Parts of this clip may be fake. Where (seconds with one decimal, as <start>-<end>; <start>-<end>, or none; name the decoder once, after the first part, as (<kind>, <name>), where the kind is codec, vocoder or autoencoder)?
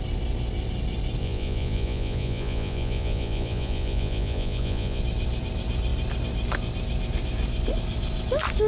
1.2-5.0 (vocoder, Vocos)